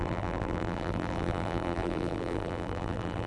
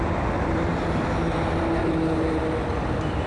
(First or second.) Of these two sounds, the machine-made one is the first